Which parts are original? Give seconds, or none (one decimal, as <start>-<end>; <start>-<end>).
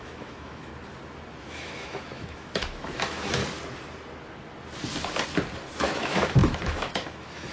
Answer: 0.7-1.4; 3.4-5.8